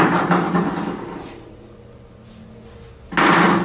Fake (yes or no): no